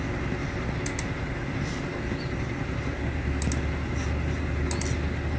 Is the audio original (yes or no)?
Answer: yes